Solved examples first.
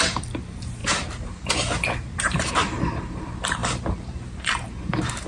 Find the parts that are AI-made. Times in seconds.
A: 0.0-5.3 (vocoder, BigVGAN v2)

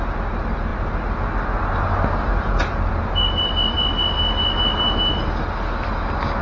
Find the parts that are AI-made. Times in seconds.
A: none

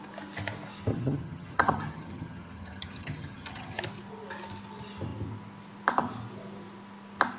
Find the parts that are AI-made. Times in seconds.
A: 0.9-3.8 (vocoder, HiFi-GAN)

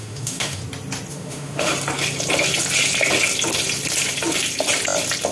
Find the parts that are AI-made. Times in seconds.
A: 0.0-0.6 (autoencoder, DAC-VAE); 1.1-1.7

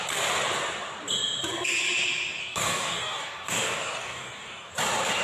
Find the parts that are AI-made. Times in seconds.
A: 2.4-4.7 (codec, DAC)

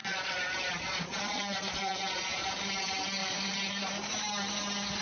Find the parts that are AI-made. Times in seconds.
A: 0.0-2.5 (vocoder, Vocos)

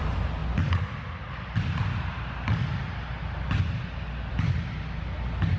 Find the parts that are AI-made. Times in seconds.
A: none